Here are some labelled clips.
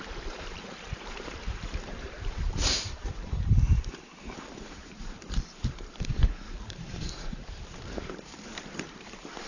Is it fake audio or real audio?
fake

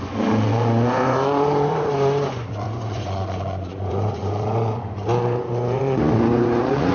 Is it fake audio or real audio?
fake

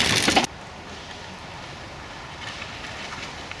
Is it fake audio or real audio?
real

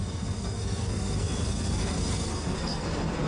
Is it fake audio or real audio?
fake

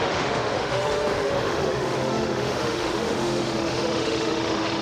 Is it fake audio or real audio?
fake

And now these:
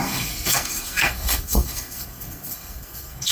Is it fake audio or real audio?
fake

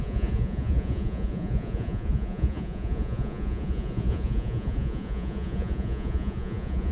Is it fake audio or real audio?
fake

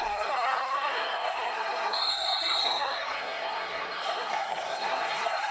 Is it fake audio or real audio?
fake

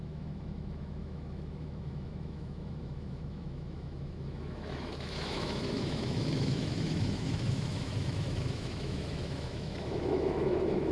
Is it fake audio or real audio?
fake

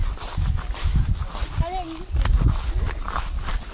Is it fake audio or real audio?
real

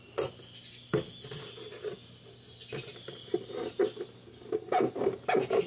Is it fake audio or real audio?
real